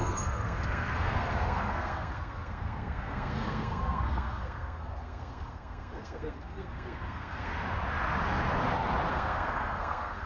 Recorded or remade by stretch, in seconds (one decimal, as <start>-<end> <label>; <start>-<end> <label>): 0.0-7.5 remade; 7.5-9.1 recorded; 9.1-10.3 remade